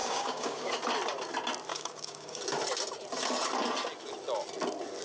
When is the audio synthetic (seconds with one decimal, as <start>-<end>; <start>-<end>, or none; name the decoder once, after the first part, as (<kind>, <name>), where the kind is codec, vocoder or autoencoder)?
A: 0.0-0.7 (codec, DAC); 1.7-2.4